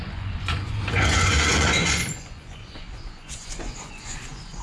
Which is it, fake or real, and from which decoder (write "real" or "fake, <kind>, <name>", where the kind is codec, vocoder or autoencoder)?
fake, vocoder, Vocos